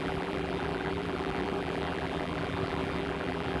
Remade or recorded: remade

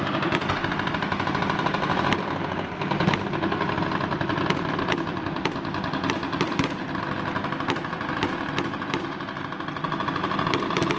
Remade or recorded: recorded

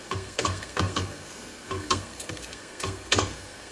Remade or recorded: remade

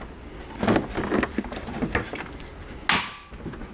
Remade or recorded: recorded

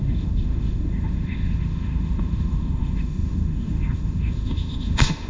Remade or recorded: remade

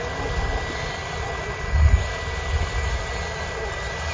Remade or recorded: recorded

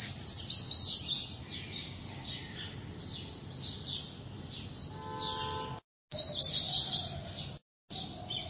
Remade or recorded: recorded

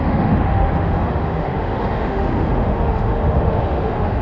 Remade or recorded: remade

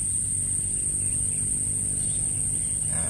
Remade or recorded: recorded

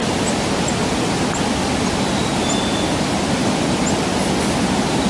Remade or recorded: recorded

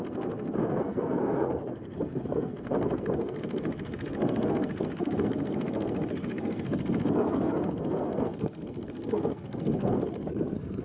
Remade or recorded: remade